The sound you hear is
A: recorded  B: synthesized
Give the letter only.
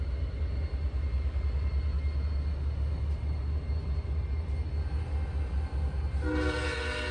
A